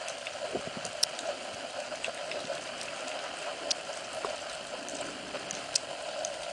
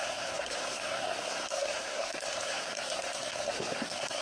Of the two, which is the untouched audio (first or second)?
first